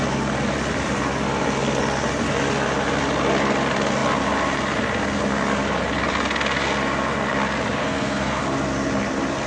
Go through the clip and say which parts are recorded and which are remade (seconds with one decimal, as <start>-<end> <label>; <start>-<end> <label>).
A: 0.0-7.8 recorded; 7.8-8.4 remade; 8.4-9.5 recorded